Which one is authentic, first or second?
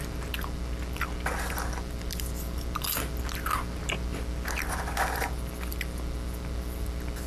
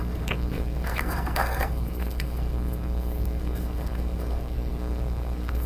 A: first